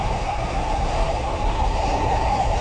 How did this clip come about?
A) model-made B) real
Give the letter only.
A